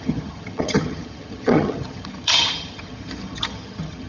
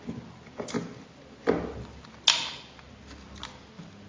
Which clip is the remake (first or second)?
first